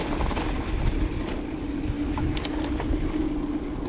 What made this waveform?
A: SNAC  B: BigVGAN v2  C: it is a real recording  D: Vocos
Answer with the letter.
C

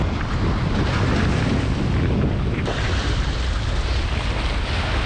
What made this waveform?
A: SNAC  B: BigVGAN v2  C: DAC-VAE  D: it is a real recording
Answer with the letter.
D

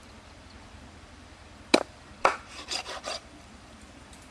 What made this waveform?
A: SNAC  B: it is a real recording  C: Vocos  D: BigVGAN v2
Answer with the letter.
D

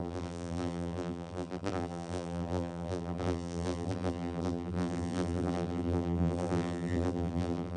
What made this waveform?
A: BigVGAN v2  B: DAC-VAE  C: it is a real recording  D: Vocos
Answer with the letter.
A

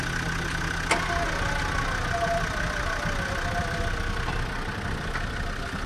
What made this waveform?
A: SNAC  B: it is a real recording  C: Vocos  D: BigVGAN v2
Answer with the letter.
B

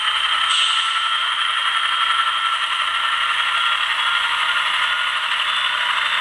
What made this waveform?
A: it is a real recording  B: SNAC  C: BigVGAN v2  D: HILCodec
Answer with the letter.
A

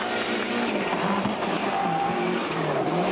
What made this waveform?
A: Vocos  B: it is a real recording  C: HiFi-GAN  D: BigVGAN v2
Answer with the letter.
D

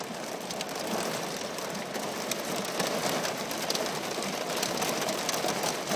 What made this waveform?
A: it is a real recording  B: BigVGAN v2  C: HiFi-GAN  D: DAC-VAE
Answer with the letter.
B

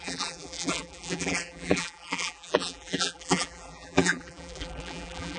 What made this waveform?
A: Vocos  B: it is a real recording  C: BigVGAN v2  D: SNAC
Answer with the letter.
C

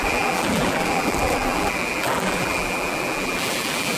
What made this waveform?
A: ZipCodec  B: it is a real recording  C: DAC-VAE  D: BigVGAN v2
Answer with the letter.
D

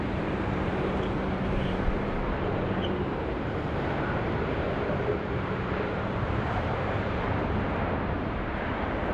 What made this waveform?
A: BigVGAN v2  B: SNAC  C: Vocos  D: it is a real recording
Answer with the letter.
A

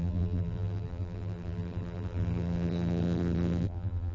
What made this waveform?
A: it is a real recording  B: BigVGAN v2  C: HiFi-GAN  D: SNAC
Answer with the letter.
B